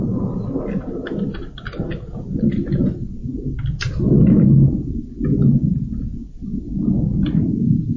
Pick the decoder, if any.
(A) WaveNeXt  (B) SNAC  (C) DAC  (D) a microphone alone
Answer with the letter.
D